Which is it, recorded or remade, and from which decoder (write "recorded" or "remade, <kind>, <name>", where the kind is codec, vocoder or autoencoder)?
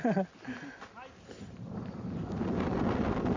recorded